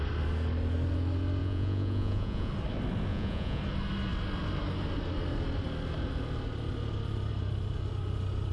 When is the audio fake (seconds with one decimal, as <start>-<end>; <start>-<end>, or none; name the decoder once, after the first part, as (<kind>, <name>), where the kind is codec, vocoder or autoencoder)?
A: 1.4-2.5 (vocoder, Vocos); 3.1-3.6